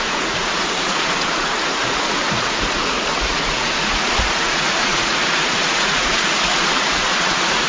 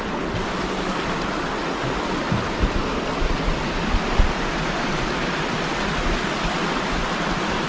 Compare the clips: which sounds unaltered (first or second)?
second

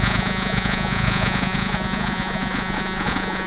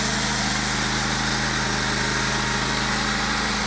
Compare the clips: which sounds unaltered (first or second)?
second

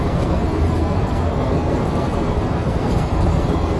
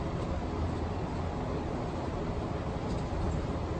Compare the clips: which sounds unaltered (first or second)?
second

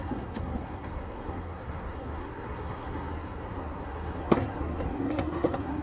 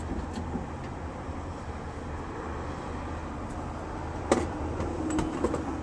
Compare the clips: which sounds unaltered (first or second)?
second